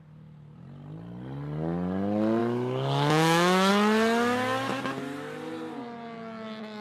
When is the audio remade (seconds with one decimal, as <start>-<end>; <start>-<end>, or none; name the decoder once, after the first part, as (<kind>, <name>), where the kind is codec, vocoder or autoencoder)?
2.4-3.7 (autoencoder, DAC-VAE)